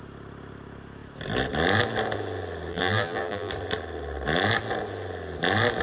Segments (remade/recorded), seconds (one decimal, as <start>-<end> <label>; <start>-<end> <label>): 0.0-2.7 recorded; 2.7-3.5 remade; 3.5-5.8 recorded